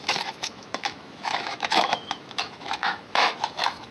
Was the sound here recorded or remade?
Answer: remade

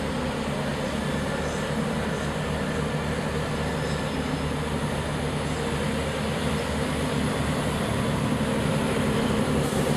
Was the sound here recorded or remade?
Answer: recorded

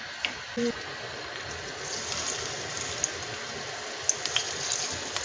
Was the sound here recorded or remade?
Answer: recorded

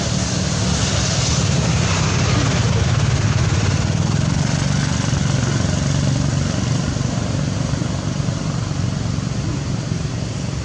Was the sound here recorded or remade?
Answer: recorded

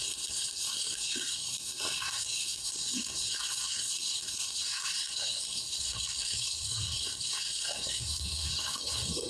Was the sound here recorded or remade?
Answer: remade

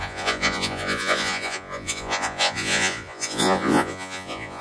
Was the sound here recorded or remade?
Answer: remade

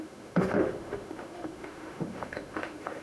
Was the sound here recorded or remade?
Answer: remade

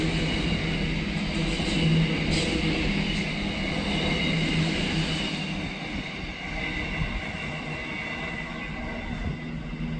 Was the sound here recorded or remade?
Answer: recorded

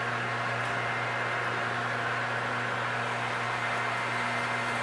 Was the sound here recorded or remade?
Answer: recorded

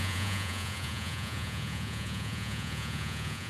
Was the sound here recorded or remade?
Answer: remade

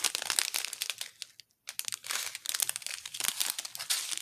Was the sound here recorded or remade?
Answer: recorded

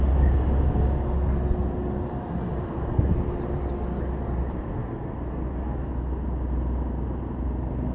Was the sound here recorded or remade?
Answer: recorded